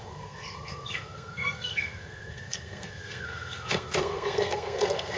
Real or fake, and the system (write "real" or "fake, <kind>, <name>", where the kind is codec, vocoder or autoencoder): fake, codec, SNAC